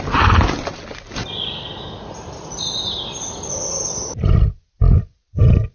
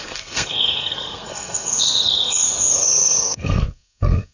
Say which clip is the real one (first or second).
first